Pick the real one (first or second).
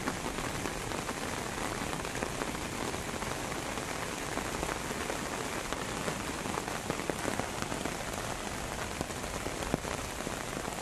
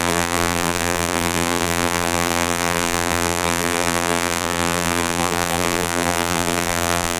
first